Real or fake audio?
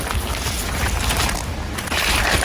real